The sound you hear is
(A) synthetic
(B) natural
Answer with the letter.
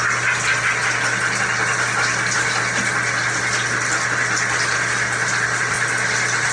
B